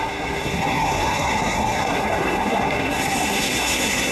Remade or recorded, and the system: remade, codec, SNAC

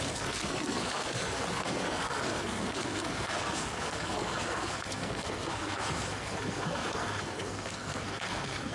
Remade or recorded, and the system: remade, codec, SNAC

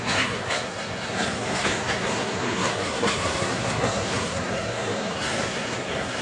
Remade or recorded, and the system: remade, codec, SNAC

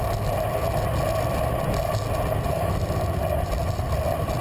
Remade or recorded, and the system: recorded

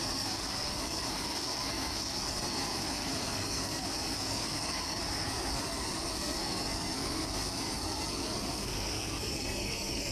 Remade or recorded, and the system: remade, codec, SNAC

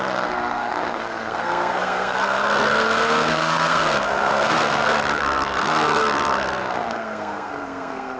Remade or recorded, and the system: remade, codec, SNAC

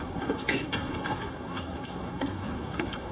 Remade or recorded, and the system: remade, codec, SNAC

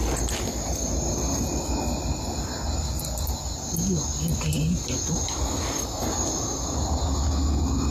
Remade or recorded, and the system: recorded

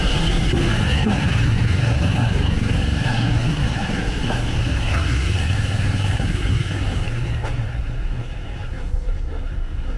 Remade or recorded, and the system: remade, codec, SNAC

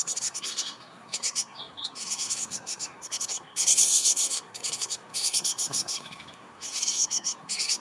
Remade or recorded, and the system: remade, codec, SNAC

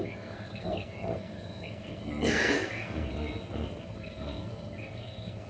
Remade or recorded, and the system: remade, codec, SNAC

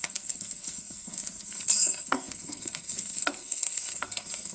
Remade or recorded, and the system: remade, codec, SNAC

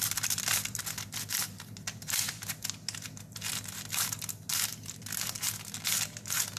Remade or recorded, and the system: recorded